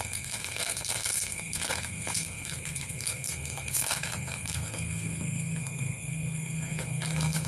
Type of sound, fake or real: fake